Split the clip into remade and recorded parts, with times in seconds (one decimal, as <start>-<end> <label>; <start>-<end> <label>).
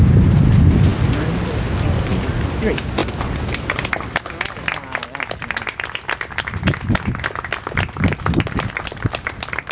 0.0-9.7 recorded